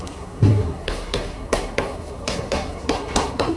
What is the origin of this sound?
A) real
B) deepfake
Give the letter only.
B